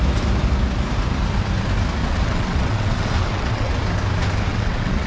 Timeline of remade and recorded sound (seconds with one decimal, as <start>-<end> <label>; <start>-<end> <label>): 0.0-2.0 recorded; 2.0-3.7 remade; 3.7-4.5 recorded; 4.5-5.1 remade